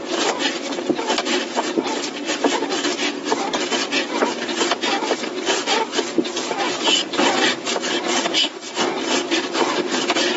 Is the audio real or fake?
fake